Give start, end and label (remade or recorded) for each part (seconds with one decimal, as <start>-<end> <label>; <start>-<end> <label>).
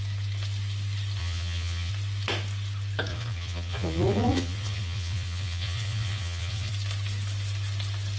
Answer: 0.0-1.2 recorded; 1.2-1.9 remade; 1.9-3.1 recorded; 3.1-6.7 remade; 6.7-8.2 recorded